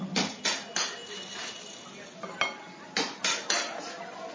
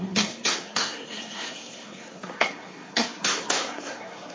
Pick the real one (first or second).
first